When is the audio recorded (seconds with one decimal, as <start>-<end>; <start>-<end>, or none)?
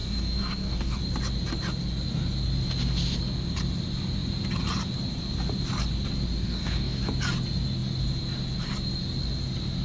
1.0-6.4; 7.0-9.8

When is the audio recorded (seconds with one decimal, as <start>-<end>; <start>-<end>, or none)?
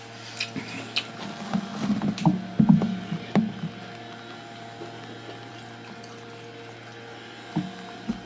0.0-8.3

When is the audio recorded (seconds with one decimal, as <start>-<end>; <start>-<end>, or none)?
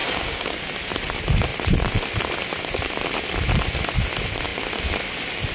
0.7-5.5